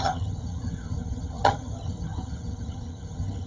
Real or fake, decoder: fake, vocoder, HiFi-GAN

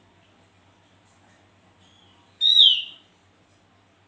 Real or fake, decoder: real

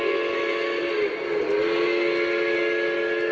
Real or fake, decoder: real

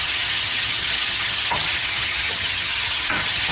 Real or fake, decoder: fake, vocoder, HiFi-GAN